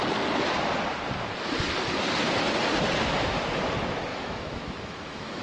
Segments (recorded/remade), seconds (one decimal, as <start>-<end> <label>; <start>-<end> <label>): 0.0-4.1 recorded; 4.1-5.4 remade